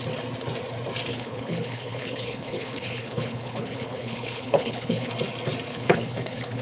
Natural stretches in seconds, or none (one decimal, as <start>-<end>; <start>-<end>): 0.0-1.1; 5.1-5.7